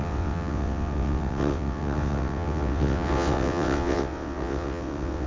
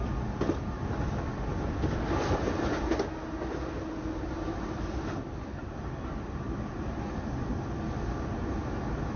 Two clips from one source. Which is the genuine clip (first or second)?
second